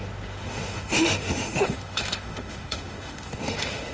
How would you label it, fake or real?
fake